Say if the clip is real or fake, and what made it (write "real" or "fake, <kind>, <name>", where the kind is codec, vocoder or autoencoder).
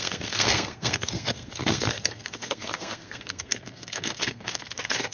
fake, codec, SNAC